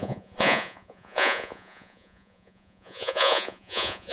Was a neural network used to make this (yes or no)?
yes